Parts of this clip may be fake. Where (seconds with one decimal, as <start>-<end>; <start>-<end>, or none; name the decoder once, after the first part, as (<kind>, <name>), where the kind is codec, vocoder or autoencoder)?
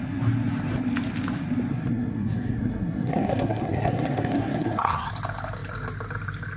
1.7-5.1 (codec, SNAC)